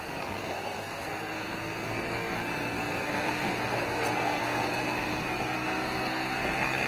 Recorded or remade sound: remade